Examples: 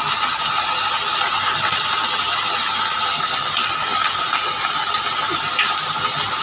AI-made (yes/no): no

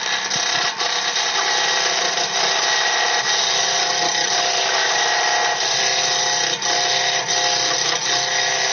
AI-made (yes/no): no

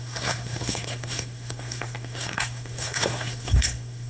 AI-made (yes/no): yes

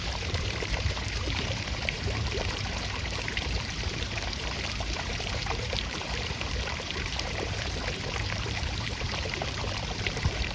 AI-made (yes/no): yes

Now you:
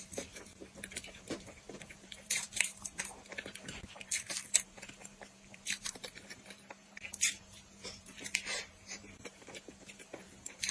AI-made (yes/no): yes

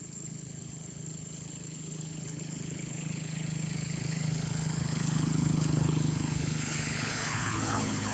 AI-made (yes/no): yes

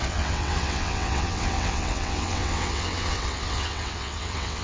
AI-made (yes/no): yes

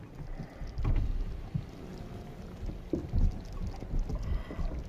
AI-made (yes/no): no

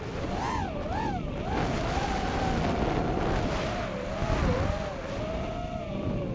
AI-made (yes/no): no